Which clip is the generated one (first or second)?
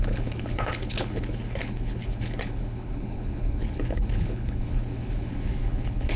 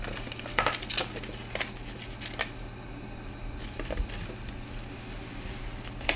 first